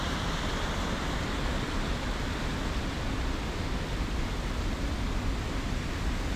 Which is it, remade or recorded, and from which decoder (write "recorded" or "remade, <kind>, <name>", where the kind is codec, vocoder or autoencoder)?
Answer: recorded